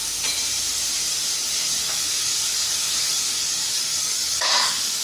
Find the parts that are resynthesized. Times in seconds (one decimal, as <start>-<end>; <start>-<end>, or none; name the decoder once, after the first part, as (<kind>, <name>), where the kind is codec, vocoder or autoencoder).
1.7-5.0 (codec, DAC)